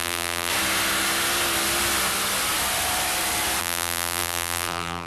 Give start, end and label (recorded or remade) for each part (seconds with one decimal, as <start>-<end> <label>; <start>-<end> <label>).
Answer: 0.0-0.5 remade; 0.5-3.6 recorded; 3.6-5.1 remade